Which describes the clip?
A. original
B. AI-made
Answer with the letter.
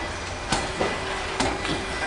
A